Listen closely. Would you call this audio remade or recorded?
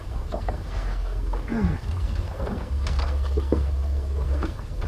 remade